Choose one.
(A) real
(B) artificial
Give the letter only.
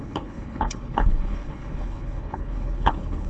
B